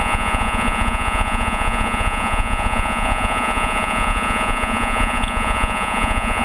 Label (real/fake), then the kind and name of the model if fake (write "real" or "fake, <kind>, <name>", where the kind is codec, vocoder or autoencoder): fake, vocoder, Vocos